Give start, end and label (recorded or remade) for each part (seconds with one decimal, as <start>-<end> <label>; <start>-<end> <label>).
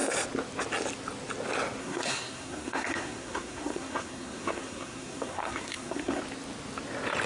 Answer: 0.0-1.8 recorded; 1.8-6.2 remade; 6.2-7.3 recorded